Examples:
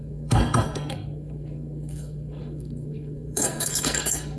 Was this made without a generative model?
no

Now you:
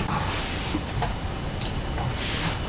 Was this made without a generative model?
yes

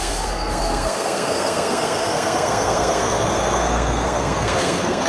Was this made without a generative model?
no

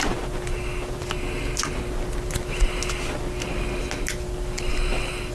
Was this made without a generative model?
yes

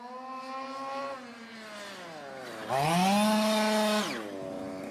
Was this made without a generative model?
yes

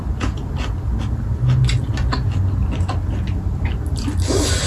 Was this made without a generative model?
yes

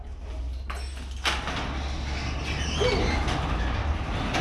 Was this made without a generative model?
yes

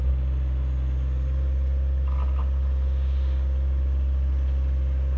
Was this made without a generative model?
yes